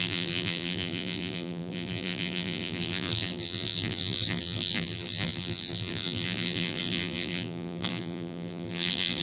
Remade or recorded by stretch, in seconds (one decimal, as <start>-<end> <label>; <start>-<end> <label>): 0.0-9.2 remade